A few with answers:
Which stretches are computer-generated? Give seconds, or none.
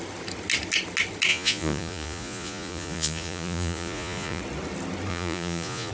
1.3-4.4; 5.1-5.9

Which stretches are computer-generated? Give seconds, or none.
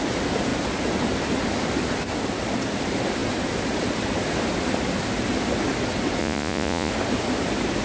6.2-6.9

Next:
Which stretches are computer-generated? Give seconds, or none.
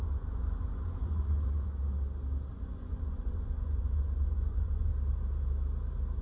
0.0-1.7; 2.5-4.9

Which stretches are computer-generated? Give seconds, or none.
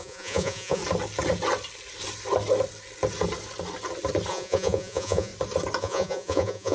0.0-0.8; 4.3-5.3; 5.8-6.7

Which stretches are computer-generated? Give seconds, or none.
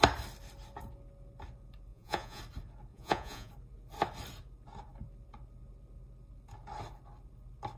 1.9-2.4; 2.9-3.5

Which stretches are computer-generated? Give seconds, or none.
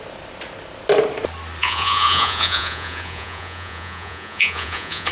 1.6-5.1